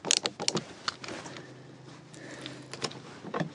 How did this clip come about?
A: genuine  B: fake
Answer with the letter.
A